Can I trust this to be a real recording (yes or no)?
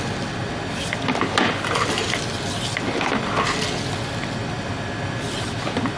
yes